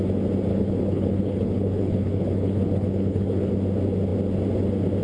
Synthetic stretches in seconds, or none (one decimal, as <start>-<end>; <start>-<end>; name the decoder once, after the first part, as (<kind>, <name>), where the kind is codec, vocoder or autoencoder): 0.5-3.5 (codec, HILCodec)